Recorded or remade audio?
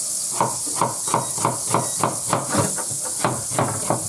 recorded